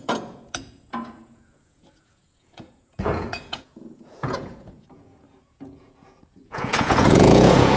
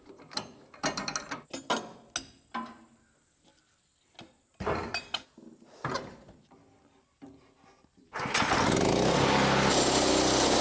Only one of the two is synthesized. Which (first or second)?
first